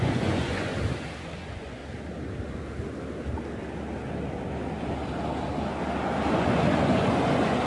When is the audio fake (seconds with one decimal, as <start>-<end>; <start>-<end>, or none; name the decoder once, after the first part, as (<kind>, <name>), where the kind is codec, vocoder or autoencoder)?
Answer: 0.0-0.7 (vocoder, Vocos); 1.2-1.8; 6.3-7.7